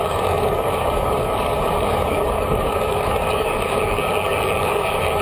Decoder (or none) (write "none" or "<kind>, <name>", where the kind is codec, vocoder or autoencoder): codec, DAC